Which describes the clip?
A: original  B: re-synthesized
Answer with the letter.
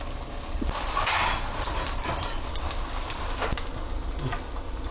A